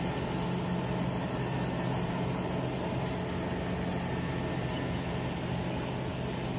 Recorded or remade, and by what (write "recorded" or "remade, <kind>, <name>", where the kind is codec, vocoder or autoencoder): recorded